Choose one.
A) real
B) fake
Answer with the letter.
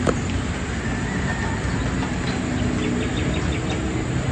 A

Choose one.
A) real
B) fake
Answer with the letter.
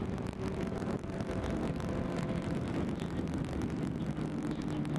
A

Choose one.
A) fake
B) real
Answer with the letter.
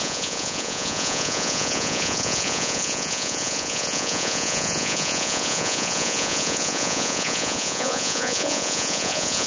A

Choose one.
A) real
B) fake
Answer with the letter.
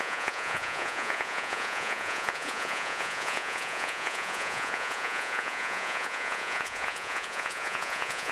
B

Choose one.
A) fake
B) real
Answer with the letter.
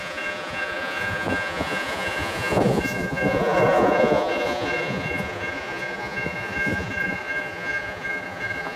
A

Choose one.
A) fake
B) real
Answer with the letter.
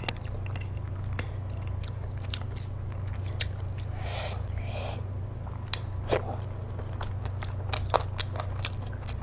B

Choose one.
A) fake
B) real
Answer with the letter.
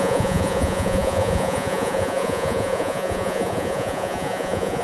A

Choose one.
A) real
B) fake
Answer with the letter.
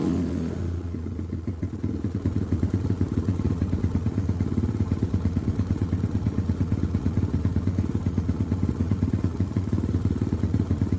B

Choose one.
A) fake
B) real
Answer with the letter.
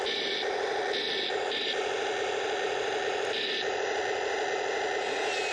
B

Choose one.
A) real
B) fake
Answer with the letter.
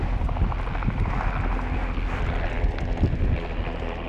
A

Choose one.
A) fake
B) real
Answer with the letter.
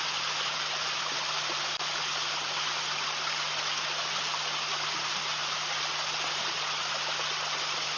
B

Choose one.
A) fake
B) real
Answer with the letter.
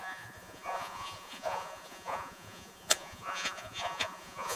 A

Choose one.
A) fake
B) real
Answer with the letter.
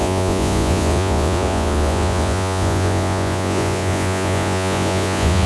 A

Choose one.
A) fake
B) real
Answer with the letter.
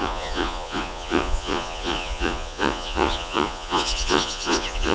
A